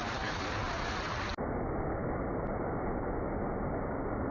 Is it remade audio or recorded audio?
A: recorded